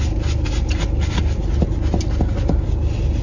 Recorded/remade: recorded